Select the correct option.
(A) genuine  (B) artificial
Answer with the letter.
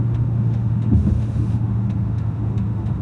B